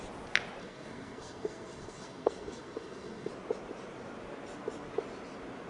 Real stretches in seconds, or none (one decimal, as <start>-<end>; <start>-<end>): 0.0-0.6; 3.3-5.7